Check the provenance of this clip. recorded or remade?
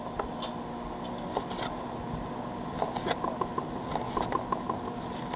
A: recorded